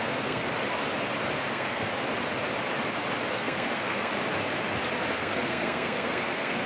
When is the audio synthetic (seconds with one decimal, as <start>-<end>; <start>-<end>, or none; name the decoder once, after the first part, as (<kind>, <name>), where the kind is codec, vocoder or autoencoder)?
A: 0.0-0.4 (codec, SNAC); 1.5-1.9; 3.3-4.1; 5.1-6.7